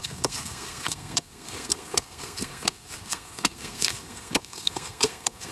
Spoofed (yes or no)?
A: yes